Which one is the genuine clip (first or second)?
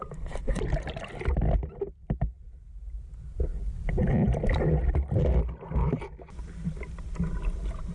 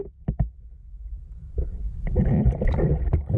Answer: first